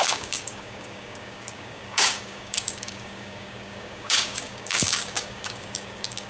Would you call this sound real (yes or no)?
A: no